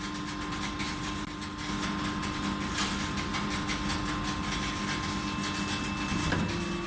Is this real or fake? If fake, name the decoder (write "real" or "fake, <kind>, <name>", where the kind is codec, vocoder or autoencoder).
real